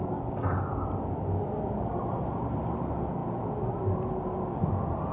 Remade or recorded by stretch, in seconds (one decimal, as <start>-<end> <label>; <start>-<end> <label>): 0.0-5.1 recorded